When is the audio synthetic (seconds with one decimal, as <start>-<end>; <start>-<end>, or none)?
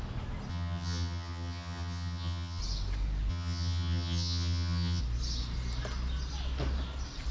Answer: 0.5-2.6; 3.3-5.0